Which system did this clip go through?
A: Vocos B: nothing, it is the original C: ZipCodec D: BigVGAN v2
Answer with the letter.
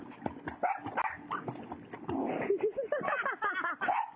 B